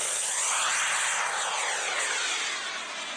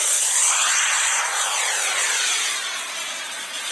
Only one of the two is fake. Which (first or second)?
second